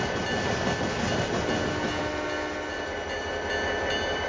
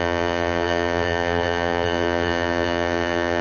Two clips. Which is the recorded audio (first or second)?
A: first